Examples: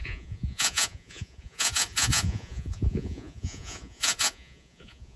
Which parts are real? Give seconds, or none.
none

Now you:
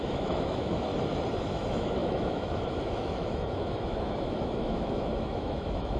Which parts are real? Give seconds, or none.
0.9-1.4

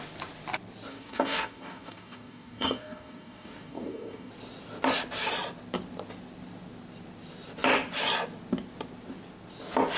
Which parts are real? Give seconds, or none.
0.0-0.9; 4.3-10.0

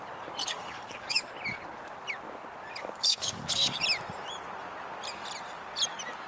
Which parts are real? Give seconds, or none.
0.0-0.4; 1.3-2.8; 3.8-6.3

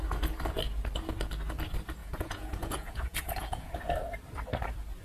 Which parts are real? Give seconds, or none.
0.0-2.0; 3.7-5.0

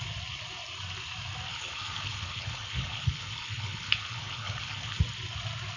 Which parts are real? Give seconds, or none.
0.0-1.5; 5.0-5.8

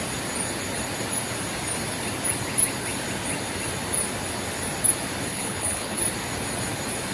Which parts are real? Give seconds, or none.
0.0-5.3; 6.0-7.1

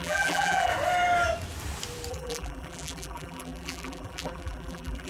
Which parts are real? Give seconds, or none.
0.7-2.1